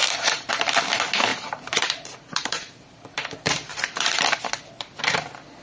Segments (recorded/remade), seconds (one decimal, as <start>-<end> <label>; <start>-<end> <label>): 0.0-0.5 remade; 0.5-1.3 recorded; 1.3-4.2 remade; 4.2-5.6 recorded